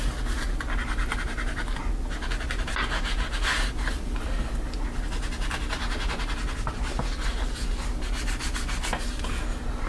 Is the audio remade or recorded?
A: recorded